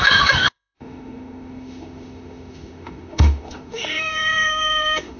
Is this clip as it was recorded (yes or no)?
no